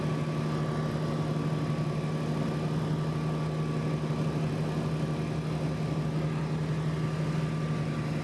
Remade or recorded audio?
recorded